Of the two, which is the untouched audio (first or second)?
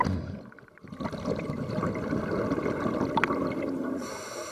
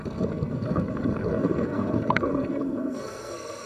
first